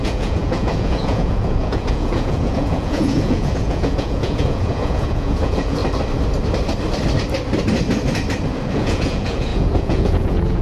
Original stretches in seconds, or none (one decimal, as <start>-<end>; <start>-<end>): 5.8-8.7